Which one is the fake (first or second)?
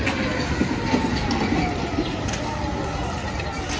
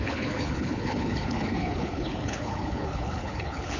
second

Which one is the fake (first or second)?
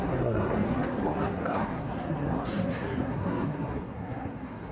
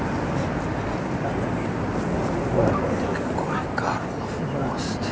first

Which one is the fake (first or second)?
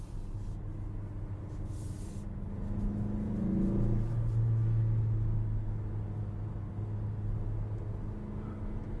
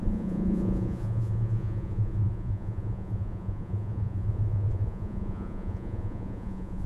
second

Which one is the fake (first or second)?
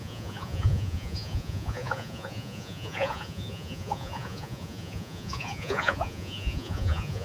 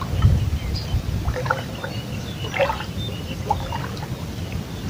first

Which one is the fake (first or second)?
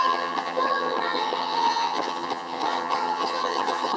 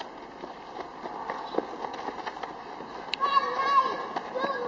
first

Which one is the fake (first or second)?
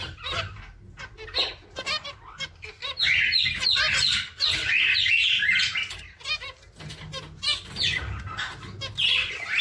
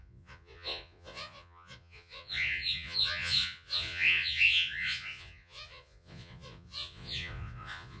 second